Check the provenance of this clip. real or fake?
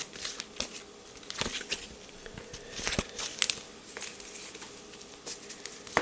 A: real